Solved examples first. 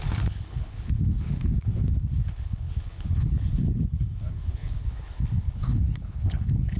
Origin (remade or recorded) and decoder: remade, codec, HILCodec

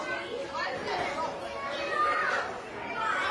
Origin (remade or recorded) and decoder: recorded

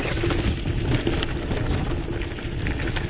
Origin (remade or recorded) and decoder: recorded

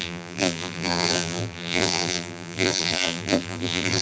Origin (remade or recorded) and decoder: remade, vocoder, BigVGAN v2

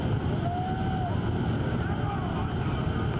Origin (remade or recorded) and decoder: recorded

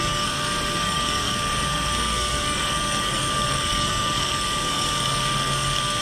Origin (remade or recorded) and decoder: remade, codec, SNAC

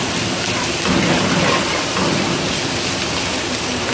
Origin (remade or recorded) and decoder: recorded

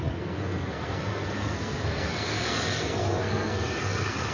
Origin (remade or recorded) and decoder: remade, codec, SNAC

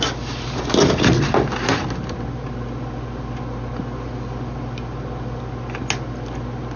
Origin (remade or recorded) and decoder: recorded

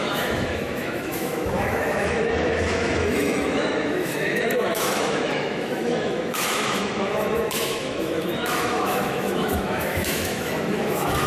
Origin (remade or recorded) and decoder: remade, autoencoder, DAC-VAE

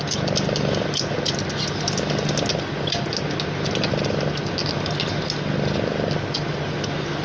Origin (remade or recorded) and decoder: recorded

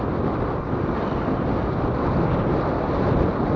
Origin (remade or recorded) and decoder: recorded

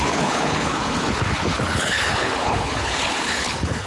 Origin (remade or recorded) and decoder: remade, codec, HILCodec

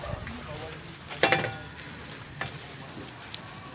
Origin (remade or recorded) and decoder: recorded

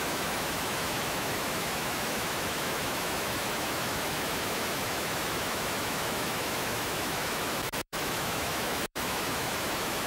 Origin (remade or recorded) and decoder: remade, autoencoder, DAC-VAE